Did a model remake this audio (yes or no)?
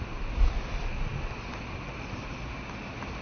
no